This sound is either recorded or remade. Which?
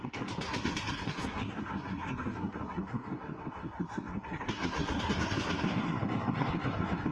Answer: remade